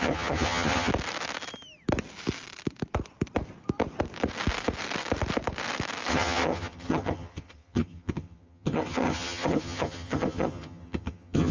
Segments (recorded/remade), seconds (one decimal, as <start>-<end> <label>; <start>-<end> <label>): 0.0-0.9 remade; 0.9-6.1 recorded; 6.1-11.5 remade